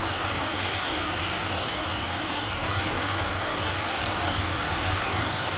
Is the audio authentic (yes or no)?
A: no